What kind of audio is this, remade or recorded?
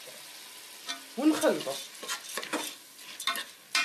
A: recorded